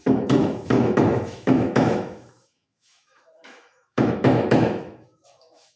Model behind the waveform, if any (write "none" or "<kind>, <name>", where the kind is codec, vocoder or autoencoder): autoencoder, DAC-VAE